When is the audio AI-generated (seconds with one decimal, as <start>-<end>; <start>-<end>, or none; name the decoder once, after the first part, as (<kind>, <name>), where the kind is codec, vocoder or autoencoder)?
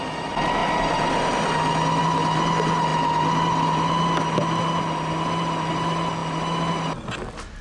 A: none